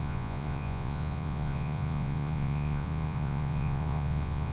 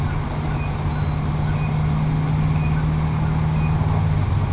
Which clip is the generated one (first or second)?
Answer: first